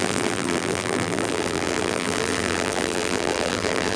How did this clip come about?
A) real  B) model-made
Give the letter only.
B